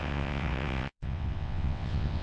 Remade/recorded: remade